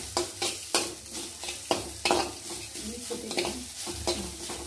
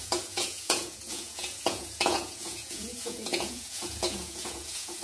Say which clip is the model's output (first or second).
second